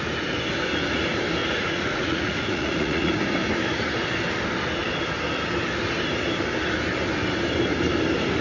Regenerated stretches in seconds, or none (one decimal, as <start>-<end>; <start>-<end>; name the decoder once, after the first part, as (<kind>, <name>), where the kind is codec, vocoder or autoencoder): 1.4-3.1 (vocoder, Vocos)